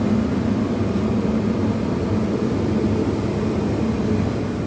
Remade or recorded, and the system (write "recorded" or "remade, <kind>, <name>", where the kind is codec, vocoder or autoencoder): recorded